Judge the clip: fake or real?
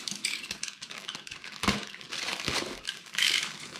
fake